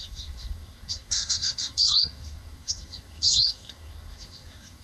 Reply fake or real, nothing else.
fake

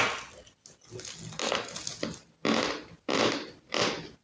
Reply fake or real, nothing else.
real